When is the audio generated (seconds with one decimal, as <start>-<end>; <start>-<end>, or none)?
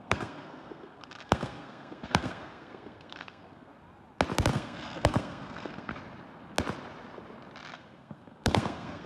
0.0-3.7; 4.5-5.9; 7.7-9.1